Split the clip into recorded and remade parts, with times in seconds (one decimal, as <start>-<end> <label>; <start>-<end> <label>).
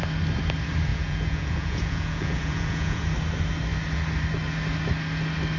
0.0-0.9 recorded; 0.9-3.0 remade; 3.0-5.6 recorded